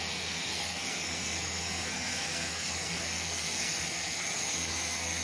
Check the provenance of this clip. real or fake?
fake